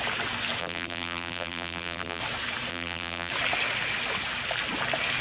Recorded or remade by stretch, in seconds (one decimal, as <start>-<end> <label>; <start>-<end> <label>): 0.0-0.6 recorded; 0.6-2.2 remade; 2.2-2.7 recorded; 2.7-3.3 remade; 3.3-5.2 recorded